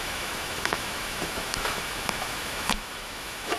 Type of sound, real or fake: fake